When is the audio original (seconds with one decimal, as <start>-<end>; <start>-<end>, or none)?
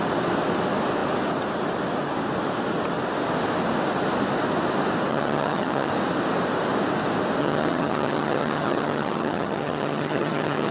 0.0-5.1; 5.9-7.4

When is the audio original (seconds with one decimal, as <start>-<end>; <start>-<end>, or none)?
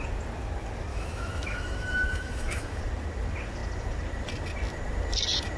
0.0-0.9; 2.8-5.6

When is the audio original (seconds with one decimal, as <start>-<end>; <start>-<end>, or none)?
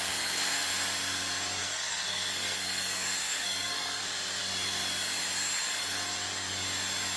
0.0-1.6; 4.0-7.2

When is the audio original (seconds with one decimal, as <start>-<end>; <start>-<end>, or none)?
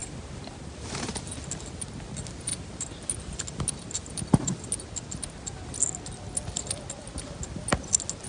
1.1-8.3